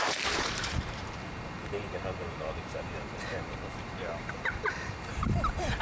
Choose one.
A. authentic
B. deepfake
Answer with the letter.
B